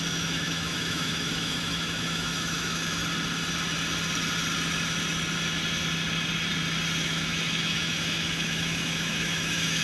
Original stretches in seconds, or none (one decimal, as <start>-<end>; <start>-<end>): 3.0-7.0